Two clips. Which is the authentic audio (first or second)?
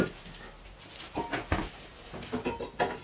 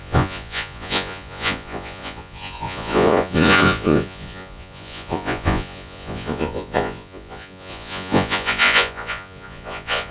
first